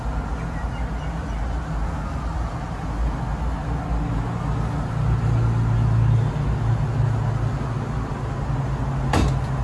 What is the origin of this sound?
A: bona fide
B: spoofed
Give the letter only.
A